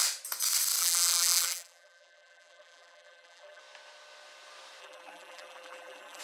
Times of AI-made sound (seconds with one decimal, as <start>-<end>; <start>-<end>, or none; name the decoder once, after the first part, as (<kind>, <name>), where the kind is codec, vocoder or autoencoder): 0.8-3.6 (vocoder, BigVGAN v2); 4.8-6.2